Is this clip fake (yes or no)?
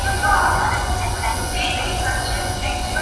yes